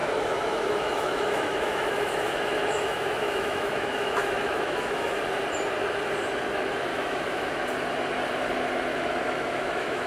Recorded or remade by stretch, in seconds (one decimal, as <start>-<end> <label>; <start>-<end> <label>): 0.0-5.2 remade; 5.2-6.9 recorded; 6.9-7.5 remade; 7.5-8.9 recorded; 8.9-10.1 remade